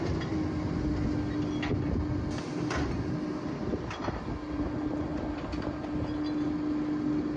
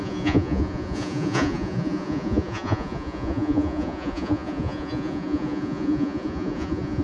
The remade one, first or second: second